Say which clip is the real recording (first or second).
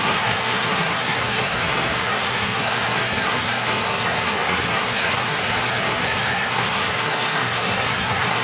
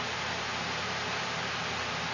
second